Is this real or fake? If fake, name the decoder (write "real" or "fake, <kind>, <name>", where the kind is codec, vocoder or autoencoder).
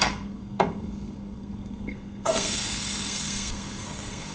fake, codec, SNAC